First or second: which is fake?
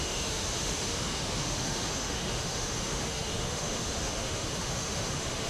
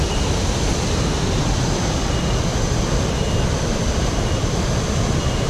first